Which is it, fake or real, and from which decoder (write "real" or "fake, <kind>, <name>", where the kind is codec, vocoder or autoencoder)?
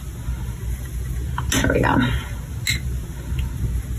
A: real